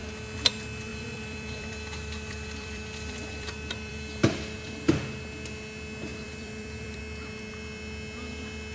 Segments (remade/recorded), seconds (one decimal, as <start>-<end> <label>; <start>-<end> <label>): 0.0-0.9 recorded; 0.9-4.9 remade; 4.9-6.1 recorded; 6.1-7.0 remade; 7.0-8.7 recorded